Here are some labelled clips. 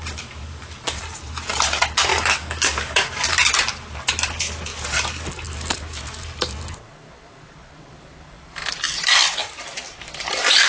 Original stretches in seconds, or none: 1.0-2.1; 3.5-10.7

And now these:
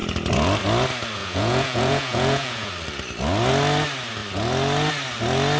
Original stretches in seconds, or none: 0.0-1.2; 2.7-5.6

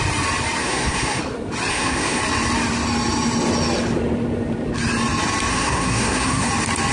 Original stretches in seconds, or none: 0.0-0.6; 1.2-1.7; 2.2-5.5; 6.5-6.9

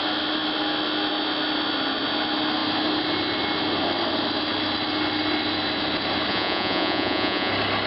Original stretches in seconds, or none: 0.0-6.3; 7.5-7.9

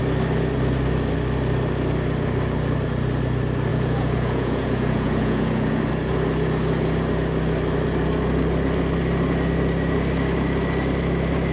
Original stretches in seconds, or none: 0.0-3.7; 5.9-11.5

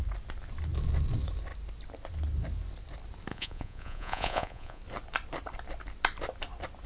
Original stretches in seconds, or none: 0.0-3.3; 4.8-6.9

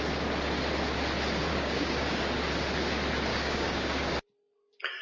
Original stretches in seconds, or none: 0.0-1.5; 2.2-3.3; 4.1-5.0

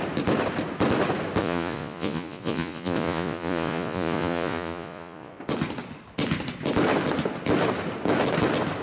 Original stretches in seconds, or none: 0.0-1.4; 5.4-8.8